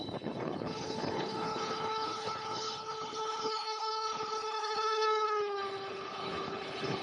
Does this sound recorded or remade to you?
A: remade